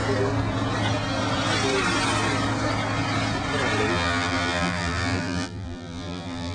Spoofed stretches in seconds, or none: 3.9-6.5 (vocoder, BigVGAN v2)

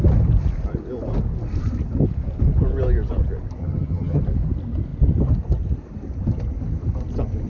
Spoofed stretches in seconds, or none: 3.6-4.2 (vocoder, HiFi-GAN)

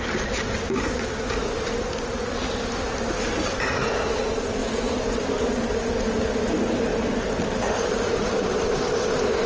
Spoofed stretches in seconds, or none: 4.6-5.2 (vocoder, BigVGAN v2); 6.9-8.4

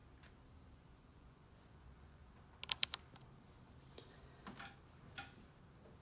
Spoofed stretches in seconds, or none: 0.7-2.2 (vocoder, Vocos)

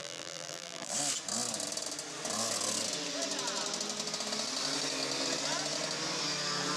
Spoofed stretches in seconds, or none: 0.0-0.9 (vocoder, BigVGAN v2)

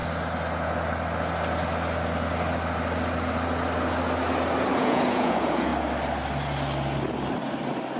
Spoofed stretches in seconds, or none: 4.8-5.7 (vocoder, Vocos)

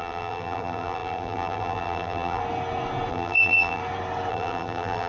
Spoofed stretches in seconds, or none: 0.0-2.4 (vocoder, BigVGAN v2); 3.1-3.8; 4.3-5.1

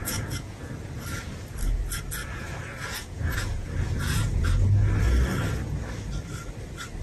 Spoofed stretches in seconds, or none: 0.0-0.7 (vocoder, Vocos); 2.2-4.4